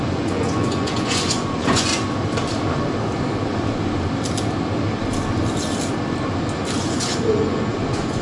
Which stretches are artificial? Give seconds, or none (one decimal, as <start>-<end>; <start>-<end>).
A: 0.0-1.9; 6.8-8.2